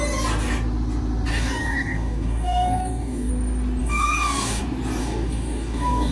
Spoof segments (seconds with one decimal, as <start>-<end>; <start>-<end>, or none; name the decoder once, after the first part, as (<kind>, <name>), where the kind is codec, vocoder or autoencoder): 1.3-3.3 (codec, DAC); 3.8-4.6; 5.0-6.1